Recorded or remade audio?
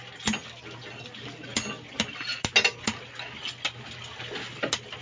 recorded